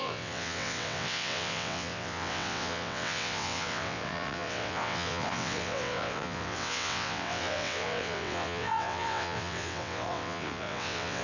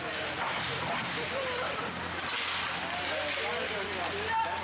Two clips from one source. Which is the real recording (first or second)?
second